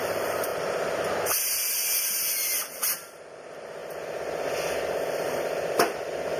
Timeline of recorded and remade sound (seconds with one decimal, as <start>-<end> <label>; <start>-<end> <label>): 0.0-3.8 remade; 3.8-6.4 recorded

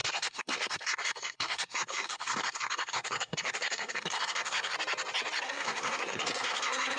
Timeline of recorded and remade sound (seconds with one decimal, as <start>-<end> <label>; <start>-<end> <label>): 0.0-4.7 remade; 4.7-5.4 recorded; 5.4-7.0 remade